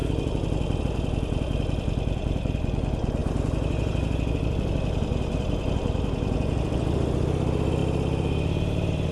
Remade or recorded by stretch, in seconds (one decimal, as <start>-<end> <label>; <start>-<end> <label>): 0.0-7.8 remade; 7.8-8.4 recorded; 8.4-9.1 remade